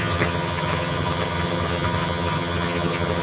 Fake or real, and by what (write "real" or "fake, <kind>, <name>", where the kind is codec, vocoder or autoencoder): fake, vocoder, HiFi-GAN